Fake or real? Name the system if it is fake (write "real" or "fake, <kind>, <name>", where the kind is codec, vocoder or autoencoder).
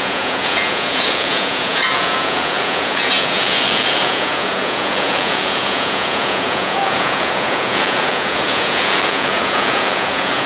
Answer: fake, vocoder, Vocos